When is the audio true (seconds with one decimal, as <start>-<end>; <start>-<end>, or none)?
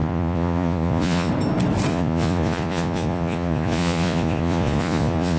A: 1.3-1.9